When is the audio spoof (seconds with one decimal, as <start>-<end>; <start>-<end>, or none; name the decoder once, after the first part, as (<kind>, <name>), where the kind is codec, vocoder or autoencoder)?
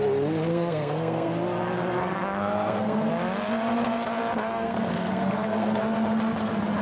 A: 0.5-1.3 (codec, SNAC); 2.0-3.1; 4.5-5.8